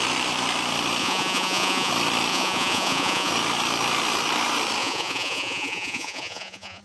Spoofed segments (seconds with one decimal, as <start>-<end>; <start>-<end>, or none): 1.0-1.9; 2.3-3.3; 4.8-6.8